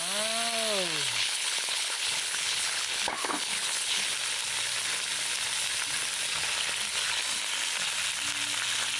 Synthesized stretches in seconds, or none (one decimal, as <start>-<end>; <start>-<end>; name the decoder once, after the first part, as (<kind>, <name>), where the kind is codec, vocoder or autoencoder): 1.1-4.0 (codec, HILCodec)